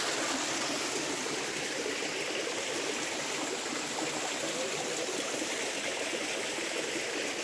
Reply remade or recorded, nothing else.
recorded